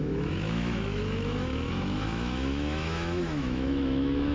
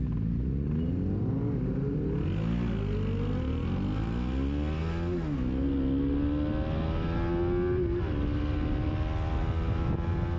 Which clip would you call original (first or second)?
second